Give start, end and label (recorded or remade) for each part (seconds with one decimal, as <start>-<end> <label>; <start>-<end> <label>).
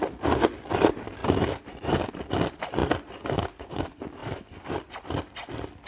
0.0-2.8 remade; 2.8-3.7 recorded; 3.7-5.9 remade